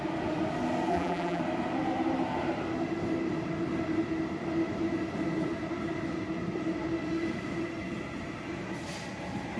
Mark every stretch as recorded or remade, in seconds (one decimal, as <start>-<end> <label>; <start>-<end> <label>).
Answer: 0.0-0.9 recorded; 0.9-1.4 remade; 1.4-9.6 recorded